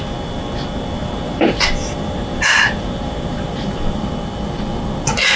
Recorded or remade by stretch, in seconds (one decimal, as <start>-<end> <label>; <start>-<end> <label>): 0.0-1.0 recorded; 1.0-4.1 remade; 4.1-5.4 recorded